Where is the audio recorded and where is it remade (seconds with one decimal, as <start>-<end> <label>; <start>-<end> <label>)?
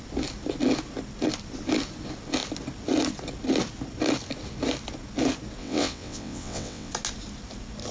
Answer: 0.0-5.6 recorded; 5.6-6.9 remade; 6.9-7.9 recorded